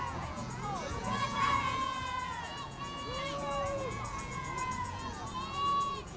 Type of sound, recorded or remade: remade